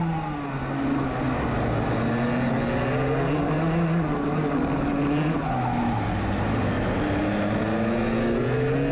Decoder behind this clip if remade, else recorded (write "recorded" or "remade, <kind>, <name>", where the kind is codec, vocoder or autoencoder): recorded